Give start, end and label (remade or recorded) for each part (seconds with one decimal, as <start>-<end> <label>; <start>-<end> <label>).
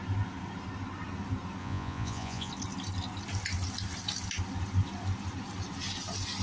0.0-1.6 recorded; 1.6-2.5 remade; 2.5-6.4 recorded